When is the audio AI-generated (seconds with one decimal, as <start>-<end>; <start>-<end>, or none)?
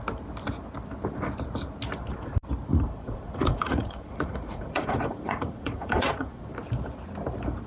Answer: 2.7-6.4